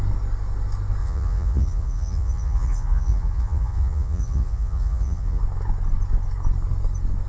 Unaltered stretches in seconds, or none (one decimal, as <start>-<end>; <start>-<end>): 0.0-1.0; 5.4-7.3